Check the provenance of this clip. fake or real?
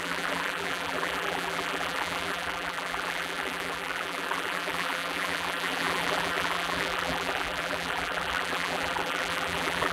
fake